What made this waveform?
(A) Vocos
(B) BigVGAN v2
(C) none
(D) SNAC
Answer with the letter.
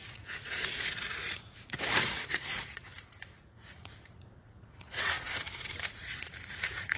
A